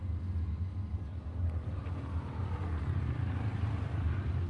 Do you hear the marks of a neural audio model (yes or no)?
no